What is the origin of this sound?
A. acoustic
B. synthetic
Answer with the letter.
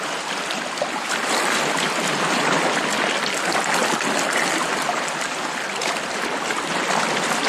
A